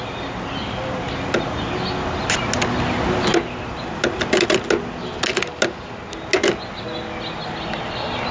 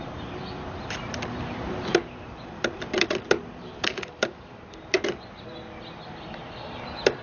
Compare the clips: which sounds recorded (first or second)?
first